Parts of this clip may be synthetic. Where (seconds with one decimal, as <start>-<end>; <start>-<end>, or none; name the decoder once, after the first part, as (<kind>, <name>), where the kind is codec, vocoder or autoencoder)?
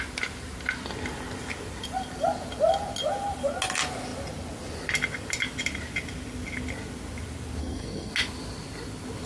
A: 7.6-8.1 (codec, SNAC)